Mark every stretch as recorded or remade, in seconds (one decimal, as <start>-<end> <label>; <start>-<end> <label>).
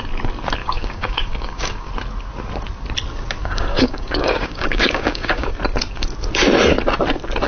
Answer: 0.0-0.6 recorded; 0.6-1.9 remade; 1.9-3.4 recorded; 3.4-5.5 remade; 5.5-7.5 recorded